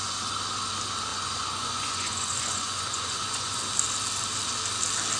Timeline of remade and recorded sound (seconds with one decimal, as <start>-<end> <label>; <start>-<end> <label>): 0.0-1.1 recorded; 1.1-3.6 remade; 3.6-5.2 recorded